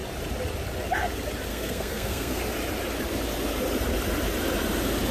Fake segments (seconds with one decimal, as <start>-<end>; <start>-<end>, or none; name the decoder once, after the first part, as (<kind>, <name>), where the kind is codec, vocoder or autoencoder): 1.5-2.4 (codec, SNAC)